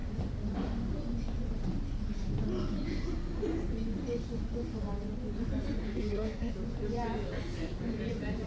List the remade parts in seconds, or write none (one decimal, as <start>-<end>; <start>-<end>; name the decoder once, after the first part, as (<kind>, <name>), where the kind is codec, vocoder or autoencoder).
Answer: 5.8-6.5 (codec, SNAC)